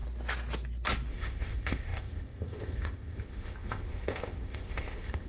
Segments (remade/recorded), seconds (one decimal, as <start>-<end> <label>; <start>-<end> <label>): 0.0-1.1 recorded; 1.1-5.3 remade